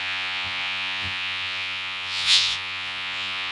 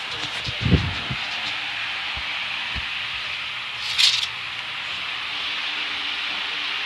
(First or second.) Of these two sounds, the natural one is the second